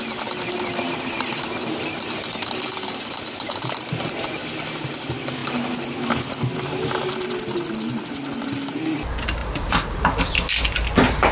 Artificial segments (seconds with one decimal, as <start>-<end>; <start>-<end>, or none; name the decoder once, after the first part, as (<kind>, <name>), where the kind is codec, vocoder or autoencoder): 9.4-10.2 (vocoder, Vocos)